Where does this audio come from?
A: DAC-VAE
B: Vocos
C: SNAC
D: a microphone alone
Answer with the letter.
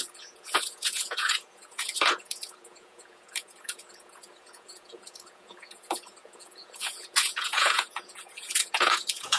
B